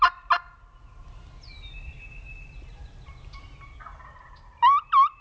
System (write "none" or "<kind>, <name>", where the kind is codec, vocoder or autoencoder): none